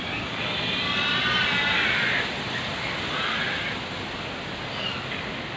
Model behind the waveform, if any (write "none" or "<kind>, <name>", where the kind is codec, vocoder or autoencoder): none